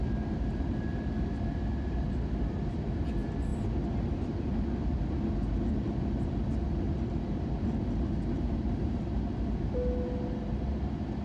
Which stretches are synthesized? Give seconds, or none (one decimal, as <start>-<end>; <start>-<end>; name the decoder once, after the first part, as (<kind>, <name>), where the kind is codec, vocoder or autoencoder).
none

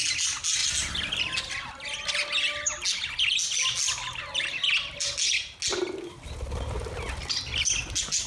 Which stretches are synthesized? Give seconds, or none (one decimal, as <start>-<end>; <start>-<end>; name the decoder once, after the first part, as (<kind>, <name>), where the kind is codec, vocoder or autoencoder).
none

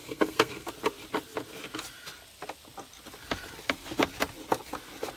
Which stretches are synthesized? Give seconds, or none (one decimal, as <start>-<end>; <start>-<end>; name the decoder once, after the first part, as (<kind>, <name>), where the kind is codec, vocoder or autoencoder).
0.0-0.7 (codec, SNAC)